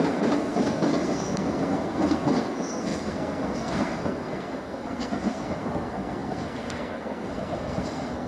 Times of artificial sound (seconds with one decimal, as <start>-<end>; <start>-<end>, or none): 0.0-8.3